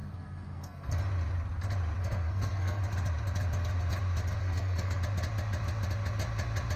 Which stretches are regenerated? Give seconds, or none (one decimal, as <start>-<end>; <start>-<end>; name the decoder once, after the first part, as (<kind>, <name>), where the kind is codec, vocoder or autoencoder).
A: 0.0-1.0 (codec, SNAC); 2.0-2.8; 4.4-5.0